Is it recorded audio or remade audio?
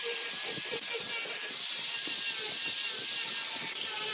recorded